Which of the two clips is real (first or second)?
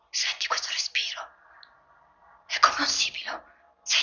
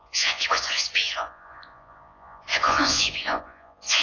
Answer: first